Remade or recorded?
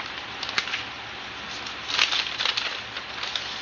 recorded